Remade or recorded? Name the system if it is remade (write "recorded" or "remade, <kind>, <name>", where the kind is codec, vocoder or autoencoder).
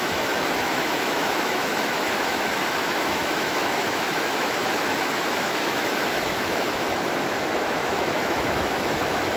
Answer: remade, autoencoder, DAC-VAE